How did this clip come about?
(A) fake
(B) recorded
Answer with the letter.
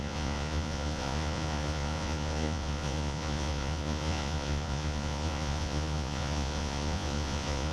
A